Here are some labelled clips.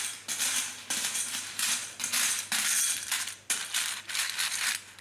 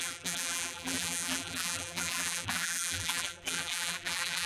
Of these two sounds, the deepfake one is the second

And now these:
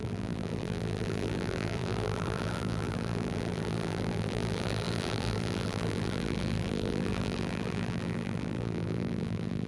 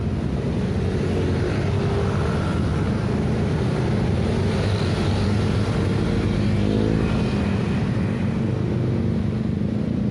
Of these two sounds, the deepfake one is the first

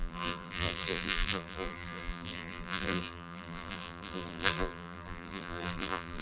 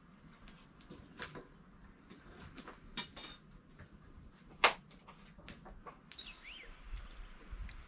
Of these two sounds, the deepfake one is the first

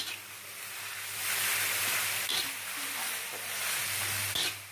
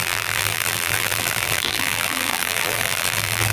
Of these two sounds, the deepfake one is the second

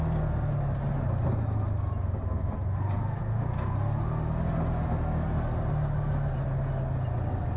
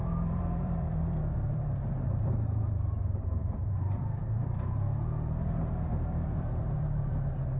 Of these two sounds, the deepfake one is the second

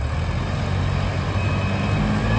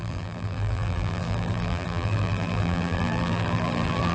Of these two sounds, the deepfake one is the second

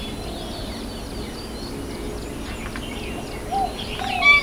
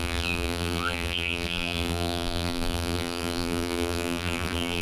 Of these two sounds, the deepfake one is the second